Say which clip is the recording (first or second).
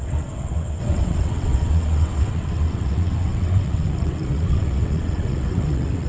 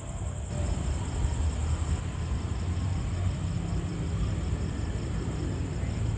second